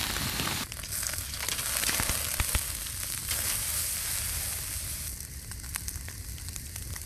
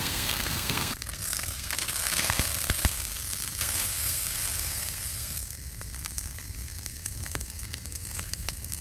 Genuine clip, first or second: first